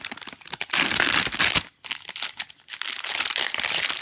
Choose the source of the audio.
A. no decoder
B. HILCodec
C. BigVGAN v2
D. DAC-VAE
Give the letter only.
A